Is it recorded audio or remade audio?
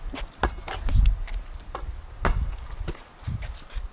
recorded